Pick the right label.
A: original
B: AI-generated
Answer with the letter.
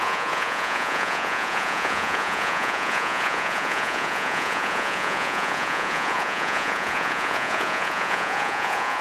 B